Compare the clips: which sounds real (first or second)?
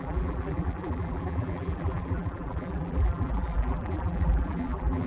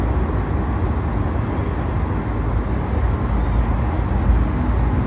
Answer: second